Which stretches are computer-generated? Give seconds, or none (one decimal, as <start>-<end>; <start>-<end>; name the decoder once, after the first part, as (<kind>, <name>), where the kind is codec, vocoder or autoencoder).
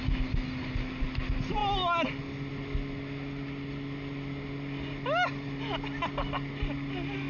none